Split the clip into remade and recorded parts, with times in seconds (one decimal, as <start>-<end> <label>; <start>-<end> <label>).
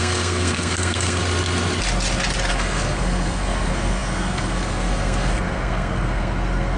0.0-1.2 remade; 1.2-2.5 recorded; 2.5-6.8 remade